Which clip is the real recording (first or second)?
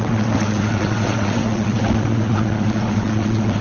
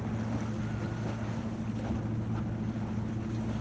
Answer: second